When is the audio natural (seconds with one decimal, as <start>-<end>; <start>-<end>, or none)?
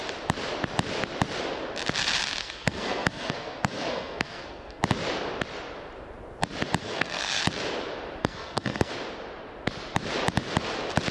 0.0-2.4; 4.8-6.8; 7.4-8.2; 8.9-11.1